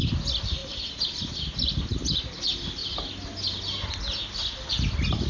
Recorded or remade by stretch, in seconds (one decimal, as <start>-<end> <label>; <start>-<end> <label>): 0.0-0.6 recorded; 0.6-1.3 remade; 1.3-5.3 recorded